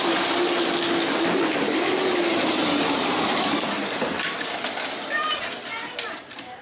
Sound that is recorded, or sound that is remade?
recorded